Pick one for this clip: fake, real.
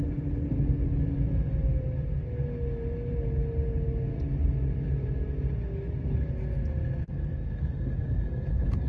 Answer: real